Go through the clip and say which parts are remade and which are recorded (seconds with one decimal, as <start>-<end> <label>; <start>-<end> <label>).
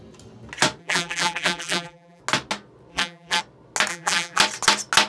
0.0-0.8 recorded; 0.8-2.2 remade; 2.2-2.9 recorded; 2.9-3.4 remade; 3.4-3.9 recorded; 3.9-4.4 remade; 4.4-5.1 recorded